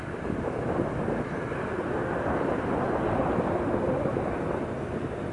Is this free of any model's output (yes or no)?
yes